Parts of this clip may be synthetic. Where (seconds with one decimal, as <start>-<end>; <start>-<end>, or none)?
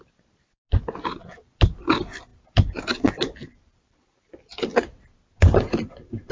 none